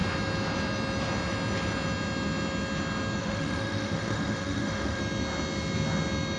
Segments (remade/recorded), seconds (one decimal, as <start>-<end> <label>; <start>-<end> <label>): 0.0-3.2 recorded; 3.2-5.0 remade; 5.0-6.4 recorded